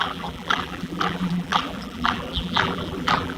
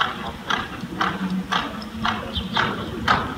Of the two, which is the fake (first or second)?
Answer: first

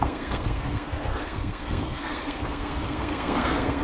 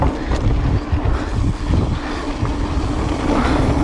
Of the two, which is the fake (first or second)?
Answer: first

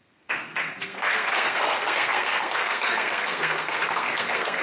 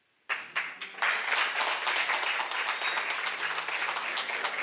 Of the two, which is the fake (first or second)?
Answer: first